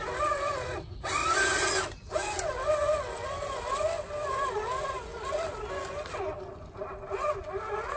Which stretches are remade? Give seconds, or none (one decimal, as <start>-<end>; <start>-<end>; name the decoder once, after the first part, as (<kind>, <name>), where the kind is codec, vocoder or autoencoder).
none